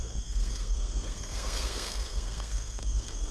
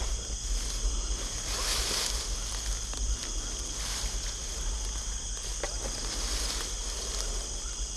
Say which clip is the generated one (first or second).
first